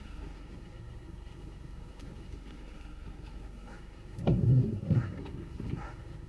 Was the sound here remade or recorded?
remade